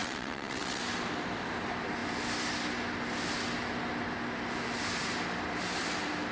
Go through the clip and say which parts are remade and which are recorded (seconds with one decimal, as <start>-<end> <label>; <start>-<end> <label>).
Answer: 0.0-0.8 remade; 0.8-6.3 recorded